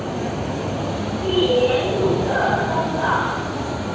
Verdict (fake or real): real